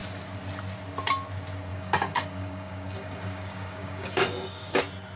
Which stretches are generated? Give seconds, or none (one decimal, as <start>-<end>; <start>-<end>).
1.7-4.8

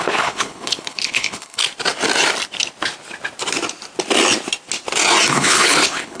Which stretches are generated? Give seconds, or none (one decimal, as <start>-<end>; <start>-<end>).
0.0-1.6; 5.3-6.2

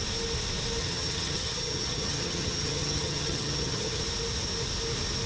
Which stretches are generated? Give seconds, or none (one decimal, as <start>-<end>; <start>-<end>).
0.8-4.0

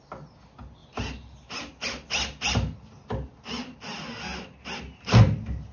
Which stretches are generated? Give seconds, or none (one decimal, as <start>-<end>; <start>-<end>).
none

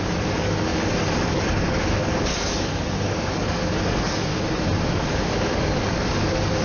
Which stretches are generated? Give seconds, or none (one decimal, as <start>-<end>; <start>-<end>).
0.0-4.3; 4.9-6.6

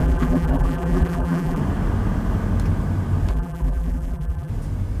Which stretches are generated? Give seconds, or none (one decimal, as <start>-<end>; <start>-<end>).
0.0-1.6; 3.3-4.5

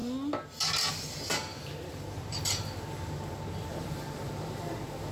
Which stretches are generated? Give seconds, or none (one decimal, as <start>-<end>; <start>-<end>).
1.5-2.4; 3.7-4.3